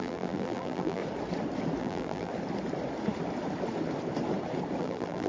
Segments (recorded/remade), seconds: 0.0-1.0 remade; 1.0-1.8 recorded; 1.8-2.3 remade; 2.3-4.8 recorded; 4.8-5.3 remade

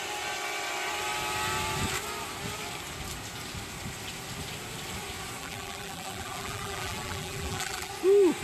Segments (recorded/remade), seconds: 0.0-5.4 recorded; 5.4-7.9 remade; 7.9-8.4 recorded

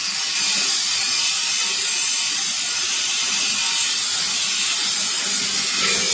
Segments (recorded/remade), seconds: 0.0-6.1 recorded

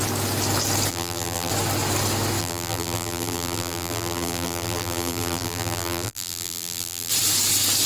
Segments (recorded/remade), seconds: 0.0-0.9 recorded; 0.9-1.5 remade; 1.5-2.4 recorded; 2.4-7.1 remade; 7.1-7.9 recorded

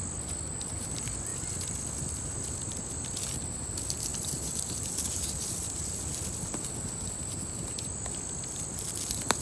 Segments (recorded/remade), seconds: 0.0-9.4 recorded

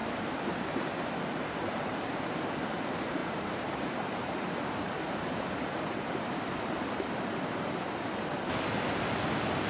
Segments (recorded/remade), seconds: 0.0-2.5 remade; 2.5-3.2 recorded; 3.2-8.1 remade; 8.1-9.7 recorded

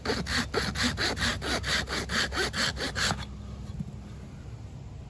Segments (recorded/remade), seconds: 0.0-5.1 recorded